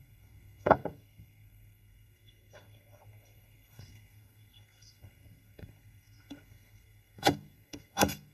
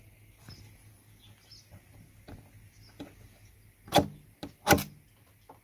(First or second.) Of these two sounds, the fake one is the first